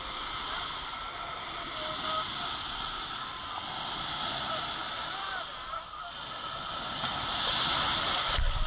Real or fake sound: real